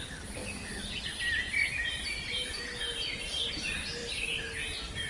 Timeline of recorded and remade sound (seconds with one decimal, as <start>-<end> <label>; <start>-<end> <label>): 0.0-5.1 recorded